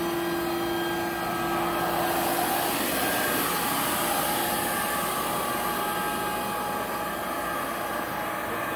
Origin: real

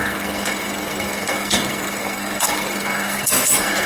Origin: fake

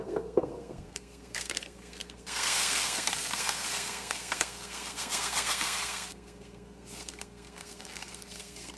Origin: fake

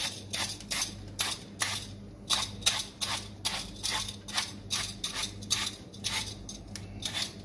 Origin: real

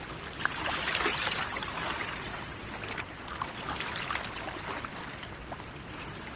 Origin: real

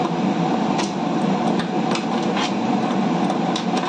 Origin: real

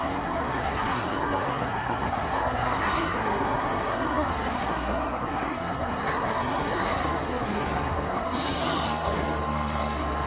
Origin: fake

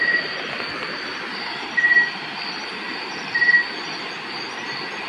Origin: real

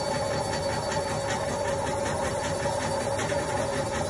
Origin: real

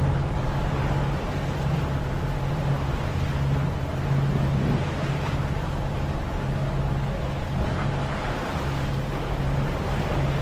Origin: real